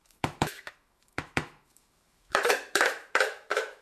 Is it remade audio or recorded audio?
remade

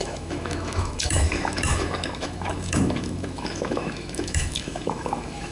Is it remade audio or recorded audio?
remade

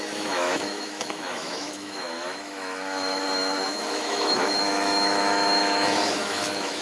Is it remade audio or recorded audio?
remade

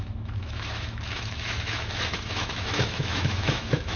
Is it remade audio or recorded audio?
remade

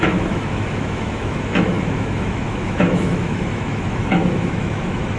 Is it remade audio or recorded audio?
remade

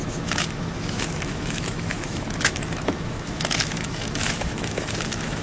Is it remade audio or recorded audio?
remade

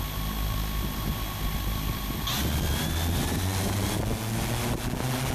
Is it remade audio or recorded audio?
recorded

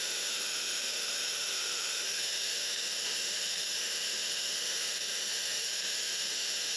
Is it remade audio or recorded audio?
remade